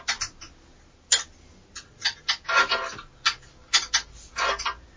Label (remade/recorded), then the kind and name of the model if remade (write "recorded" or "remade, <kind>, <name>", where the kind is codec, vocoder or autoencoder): recorded